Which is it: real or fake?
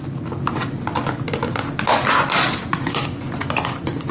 real